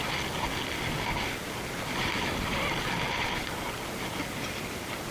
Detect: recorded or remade recorded